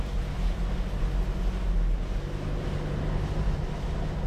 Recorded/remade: recorded